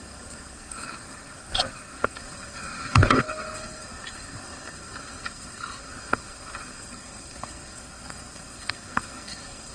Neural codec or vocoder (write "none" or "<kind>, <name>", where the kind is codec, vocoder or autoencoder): codec, SNAC